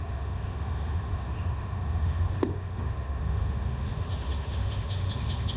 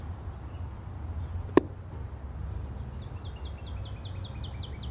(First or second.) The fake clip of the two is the first